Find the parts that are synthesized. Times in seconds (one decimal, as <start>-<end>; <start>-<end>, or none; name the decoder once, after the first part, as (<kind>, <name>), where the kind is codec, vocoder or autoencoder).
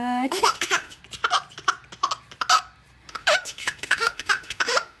0.0-1.0 (autoencoder, DAC-VAE); 3.1-5.0